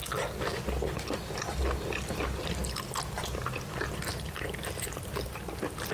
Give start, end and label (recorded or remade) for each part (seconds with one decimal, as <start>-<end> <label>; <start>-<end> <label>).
0.0-4.1 recorded; 4.1-5.4 remade; 5.4-5.9 recorded